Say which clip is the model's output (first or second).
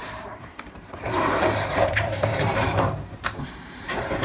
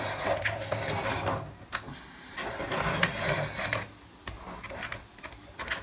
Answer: first